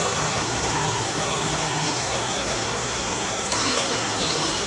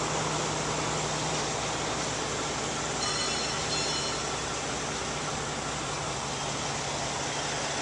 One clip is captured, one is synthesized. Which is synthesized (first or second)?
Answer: first